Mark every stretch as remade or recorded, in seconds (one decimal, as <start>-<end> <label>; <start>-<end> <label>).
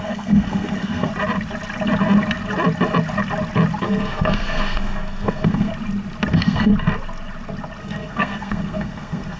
0.0-1.1 remade; 1.1-3.8 recorded; 3.8-5.7 remade; 5.7-6.3 recorded; 6.3-6.7 remade; 6.7-7.8 recorded; 7.8-9.4 remade